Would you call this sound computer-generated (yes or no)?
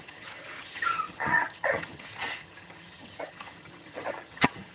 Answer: yes